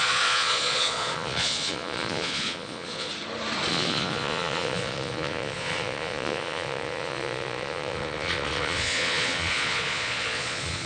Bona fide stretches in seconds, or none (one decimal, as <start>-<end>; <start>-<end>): 3.1-3.7